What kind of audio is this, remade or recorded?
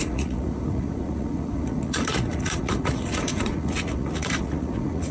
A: remade